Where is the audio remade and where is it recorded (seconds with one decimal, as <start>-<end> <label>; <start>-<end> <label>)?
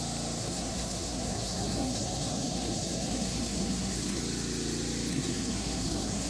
0.0-0.4 recorded; 0.4-4.2 remade; 4.2-5.1 recorded; 5.1-6.3 remade